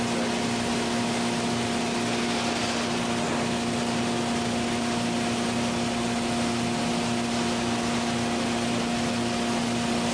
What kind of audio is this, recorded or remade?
recorded